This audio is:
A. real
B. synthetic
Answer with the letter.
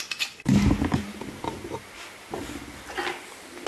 A